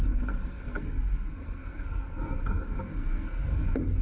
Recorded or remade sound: remade